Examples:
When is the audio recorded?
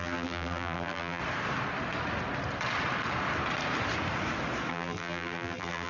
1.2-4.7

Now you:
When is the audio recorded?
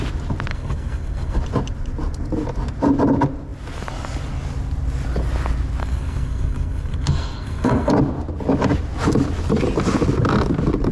0.0-0.5; 1.4-5.8; 7.9-10.9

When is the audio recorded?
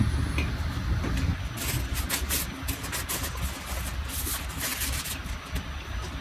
0.0-4.7; 5.3-6.2